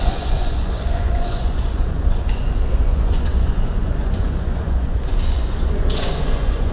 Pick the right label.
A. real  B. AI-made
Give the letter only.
B